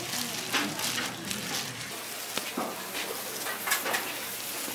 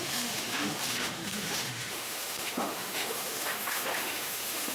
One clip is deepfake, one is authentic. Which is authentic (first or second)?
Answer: first